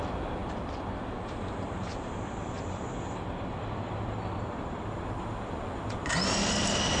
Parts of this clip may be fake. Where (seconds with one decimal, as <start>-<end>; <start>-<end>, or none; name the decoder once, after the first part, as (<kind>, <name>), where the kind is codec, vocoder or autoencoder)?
0.0-7.0 (vocoder, BigVGAN v2)